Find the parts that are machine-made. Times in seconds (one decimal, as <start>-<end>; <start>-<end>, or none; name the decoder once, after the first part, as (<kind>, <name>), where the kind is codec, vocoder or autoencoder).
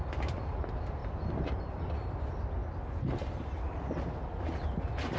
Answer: 1.0-1.7 (vocoder, BigVGAN v2)